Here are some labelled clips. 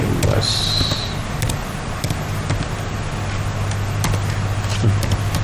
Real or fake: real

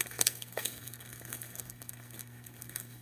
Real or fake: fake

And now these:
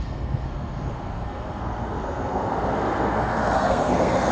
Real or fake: fake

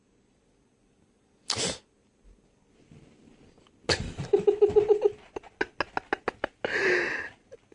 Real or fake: real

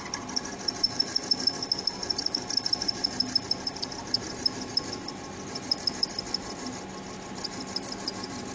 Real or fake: real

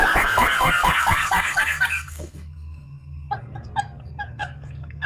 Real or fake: fake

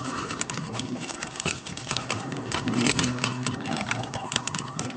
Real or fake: fake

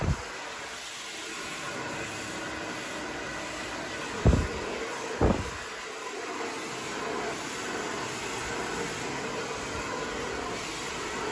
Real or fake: real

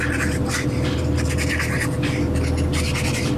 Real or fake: real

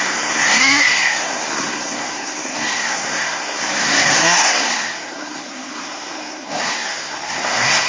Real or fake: fake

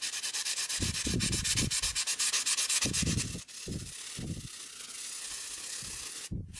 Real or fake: real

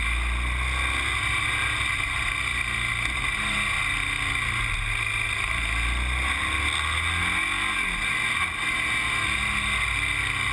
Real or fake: real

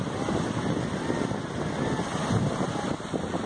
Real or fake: real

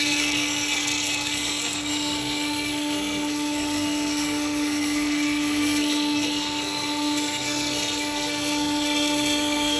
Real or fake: fake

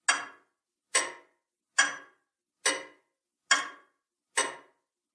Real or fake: real